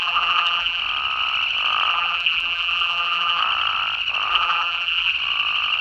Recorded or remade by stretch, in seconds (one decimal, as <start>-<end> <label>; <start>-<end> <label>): 0.0-0.8 remade; 0.8-1.9 recorded; 1.9-3.4 remade; 3.4-4.3 recorded; 4.3-5.1 remade; 5.1-5.8 recorded